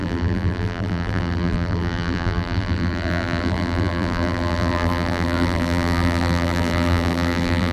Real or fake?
fake